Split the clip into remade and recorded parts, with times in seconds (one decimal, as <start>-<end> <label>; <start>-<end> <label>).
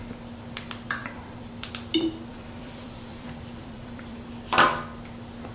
0.0-1.0 recorded; 1.0-1.7 remade; 1.7-2.3 recorded; 2.3-4.3 remade; 4.3-5.5 recorded